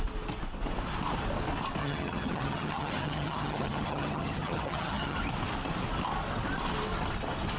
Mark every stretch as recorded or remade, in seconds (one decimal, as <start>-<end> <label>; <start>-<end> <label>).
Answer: 0.0-1.8 recorded; 1.8-5.2 remade; 5.2-7.6 recorded